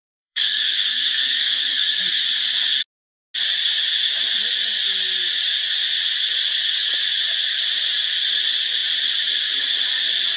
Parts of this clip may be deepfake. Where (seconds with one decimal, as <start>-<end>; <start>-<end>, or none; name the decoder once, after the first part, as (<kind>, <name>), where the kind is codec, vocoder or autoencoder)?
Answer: 0.0-2.0 (codec, DAC)